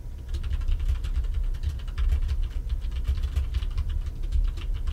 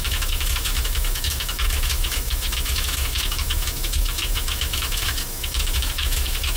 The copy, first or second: second